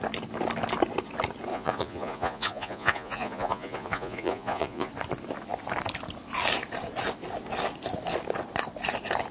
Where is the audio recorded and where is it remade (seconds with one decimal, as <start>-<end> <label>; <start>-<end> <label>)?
0.0-1.5 recorded; 1.5-4.9 remade; 4.9-9.3 recorded